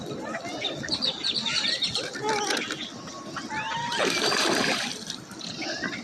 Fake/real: real